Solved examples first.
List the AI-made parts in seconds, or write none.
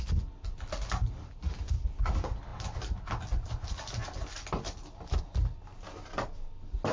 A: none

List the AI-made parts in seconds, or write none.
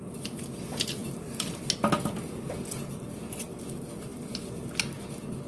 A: none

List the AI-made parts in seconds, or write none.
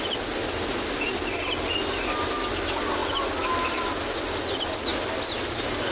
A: none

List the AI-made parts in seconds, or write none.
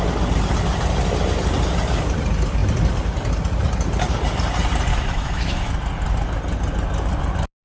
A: 4.9-5.7 (autoencoder, DAC-VAE)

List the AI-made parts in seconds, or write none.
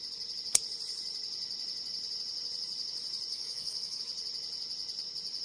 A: 3.3-4.0 (codec, DAC)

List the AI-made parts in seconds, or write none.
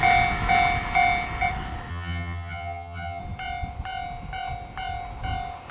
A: 1.9-3.2 (vocoder, HiFi-GAN)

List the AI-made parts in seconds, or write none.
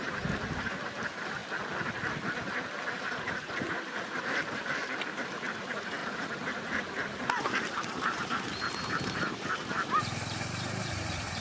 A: 0.0-1.4 (vocoder, BigVGAN v2); 3.0-11.4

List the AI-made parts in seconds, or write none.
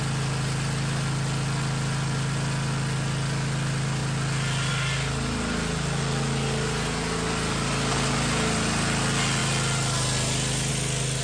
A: none